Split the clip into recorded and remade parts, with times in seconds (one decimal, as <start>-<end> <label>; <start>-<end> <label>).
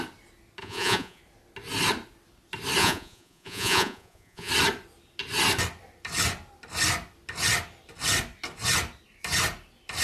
0.0-0.6 recorded; 0.6-1.2 remade; 1.2-2.8 recorded; 2.8-4.5 remade; 4.5-10.0 recorded